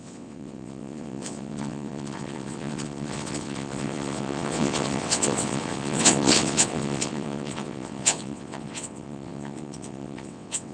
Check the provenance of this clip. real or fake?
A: fake